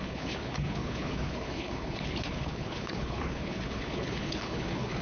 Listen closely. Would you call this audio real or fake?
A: fake